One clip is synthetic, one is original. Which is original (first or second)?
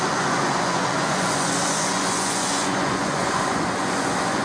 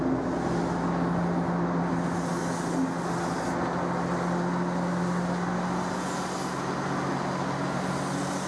second